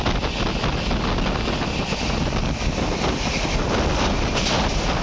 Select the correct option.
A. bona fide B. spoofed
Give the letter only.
A